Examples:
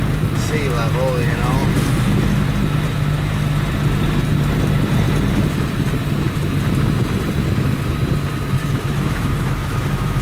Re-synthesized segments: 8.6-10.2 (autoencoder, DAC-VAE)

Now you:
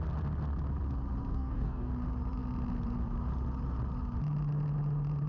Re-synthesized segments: 1.3-1.9 (codec, DAC)

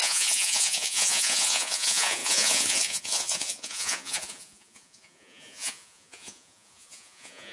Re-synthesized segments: 0.0-7.5 (vocoder, Vocos)